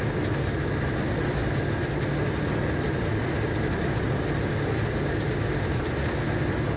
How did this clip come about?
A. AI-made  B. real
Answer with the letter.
B